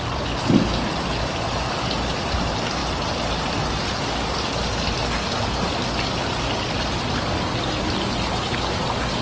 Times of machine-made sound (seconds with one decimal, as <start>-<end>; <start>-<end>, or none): none